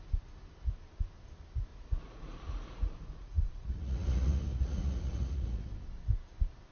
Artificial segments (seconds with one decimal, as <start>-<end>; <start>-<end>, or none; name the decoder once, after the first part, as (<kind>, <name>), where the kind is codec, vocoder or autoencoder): 1.7-5.7 (vocoder, Vocos)